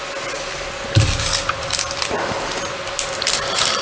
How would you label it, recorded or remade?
recorded